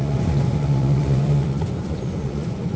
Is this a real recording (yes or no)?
no